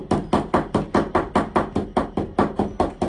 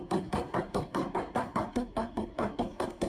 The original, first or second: first